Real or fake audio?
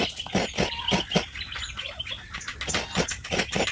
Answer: real